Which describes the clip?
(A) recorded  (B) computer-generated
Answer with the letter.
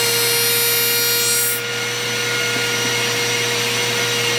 A